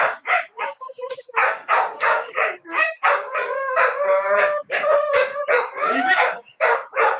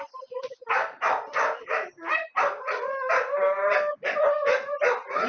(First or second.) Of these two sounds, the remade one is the first